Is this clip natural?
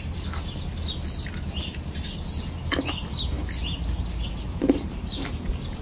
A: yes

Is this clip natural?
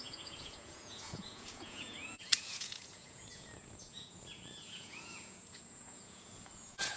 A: no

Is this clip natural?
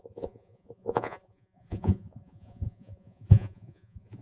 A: no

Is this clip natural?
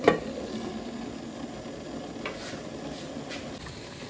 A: yes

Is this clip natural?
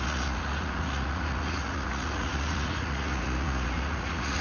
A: no